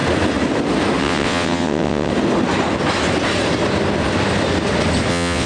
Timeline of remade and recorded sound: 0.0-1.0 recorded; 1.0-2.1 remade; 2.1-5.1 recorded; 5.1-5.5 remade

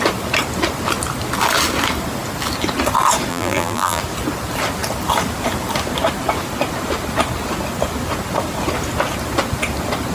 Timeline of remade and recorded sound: 0.0-3.3 recorded; 3.3-4.0 remade; 4.0-10.1 recorded

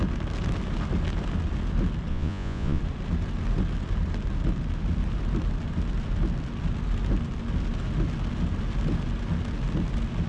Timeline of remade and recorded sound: 0.0-2.1 recorded; 2.1-2.8 remade; 2.8-10.3 recorded